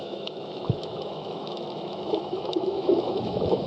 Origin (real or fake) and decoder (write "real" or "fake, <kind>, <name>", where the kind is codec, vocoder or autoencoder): fake, autoencoder, DAC-VAE